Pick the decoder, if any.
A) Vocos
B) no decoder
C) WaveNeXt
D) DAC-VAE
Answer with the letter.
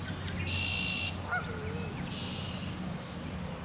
B